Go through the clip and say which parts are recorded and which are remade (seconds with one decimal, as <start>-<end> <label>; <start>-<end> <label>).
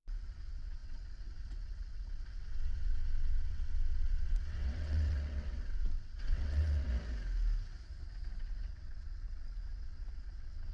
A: 0.0-6.9 remade; 6.9-8.4 recorded; 8.4-10.7 remade